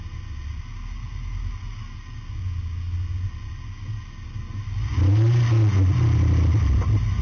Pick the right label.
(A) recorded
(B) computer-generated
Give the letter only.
A